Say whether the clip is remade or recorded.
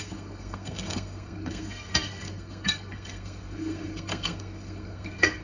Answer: remade